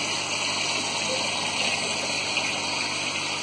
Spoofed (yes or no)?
no